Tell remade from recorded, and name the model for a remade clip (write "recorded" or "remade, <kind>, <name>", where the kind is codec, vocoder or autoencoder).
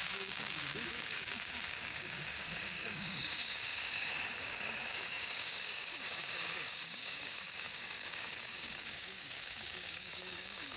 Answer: remade, codec, DAC